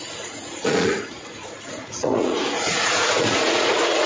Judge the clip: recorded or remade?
remade